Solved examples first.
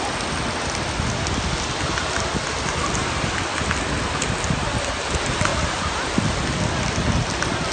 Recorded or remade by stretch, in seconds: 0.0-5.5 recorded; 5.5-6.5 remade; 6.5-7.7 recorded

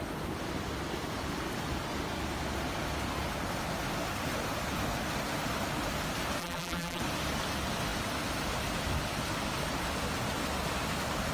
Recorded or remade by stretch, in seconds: 0.0-6.4 recorded; 6.4-7.0 remade; 7.0-11.3 recorded

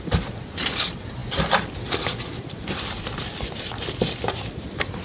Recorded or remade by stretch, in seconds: 0.0-5.0 remade

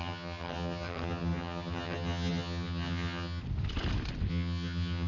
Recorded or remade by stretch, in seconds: 0.0-3.4 remade; 3.4-4.3 recorded; 4.3-5.1 remade

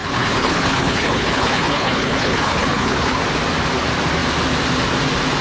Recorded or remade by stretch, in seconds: 0.0-3.2 remade; 3.2-5.4 recorded

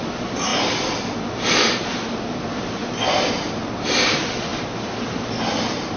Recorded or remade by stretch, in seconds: 0.0-6.0 remade

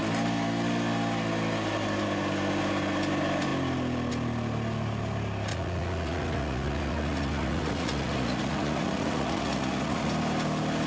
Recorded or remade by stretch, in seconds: 0.0-5.5 recorded; 5.5-10.1 remade; 10.1-10.9 recorded

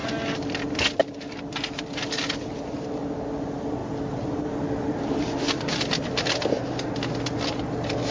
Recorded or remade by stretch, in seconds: 0.0-8.1 recorded